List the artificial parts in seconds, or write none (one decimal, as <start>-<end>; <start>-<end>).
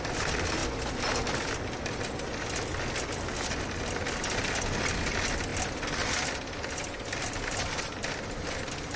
none